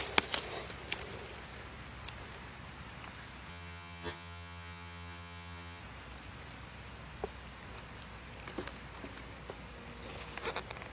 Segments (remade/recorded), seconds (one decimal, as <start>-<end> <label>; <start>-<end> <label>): 0.0-3.5 recorded; 3.5-5.8 remade; 5.8-10.9 recorded